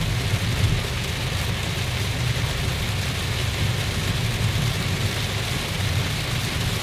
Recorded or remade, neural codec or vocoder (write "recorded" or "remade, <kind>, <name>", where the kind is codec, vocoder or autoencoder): recorded